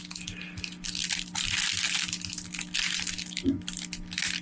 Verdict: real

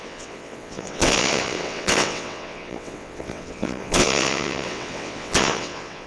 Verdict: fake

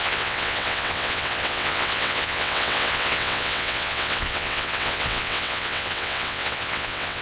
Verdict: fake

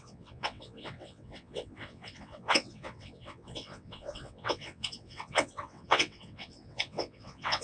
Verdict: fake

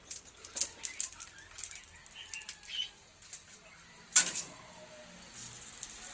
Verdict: real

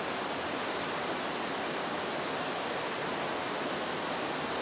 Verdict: real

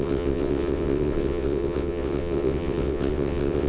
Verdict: fake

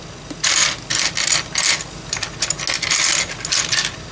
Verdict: real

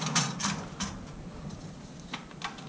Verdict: real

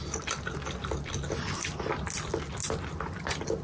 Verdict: real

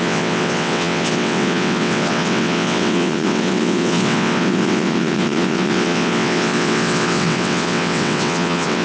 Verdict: fake